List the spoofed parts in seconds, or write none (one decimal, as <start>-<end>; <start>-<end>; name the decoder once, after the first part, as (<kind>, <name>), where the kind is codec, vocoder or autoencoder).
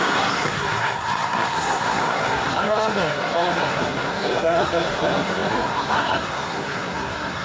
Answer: 0.0-7.4 (codec, SNAC)